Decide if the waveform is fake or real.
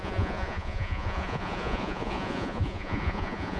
fake